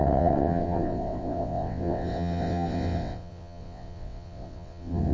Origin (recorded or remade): remade